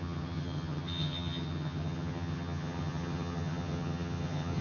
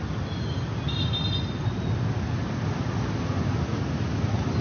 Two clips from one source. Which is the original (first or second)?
second